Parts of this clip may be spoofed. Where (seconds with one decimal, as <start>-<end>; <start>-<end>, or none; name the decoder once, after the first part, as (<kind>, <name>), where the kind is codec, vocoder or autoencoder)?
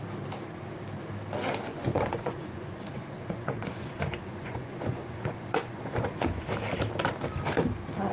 1.7-6.5 (vocoder, Vocos)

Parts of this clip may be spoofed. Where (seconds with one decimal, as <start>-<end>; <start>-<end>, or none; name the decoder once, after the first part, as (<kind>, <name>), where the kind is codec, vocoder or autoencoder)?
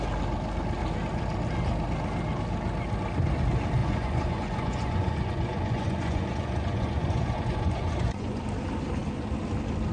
3.8-8.4 (vocoder, Vocos)